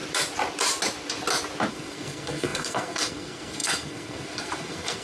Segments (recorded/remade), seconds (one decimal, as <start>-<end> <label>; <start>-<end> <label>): 0.0-1.7 recorded; 1.7-5.0 remade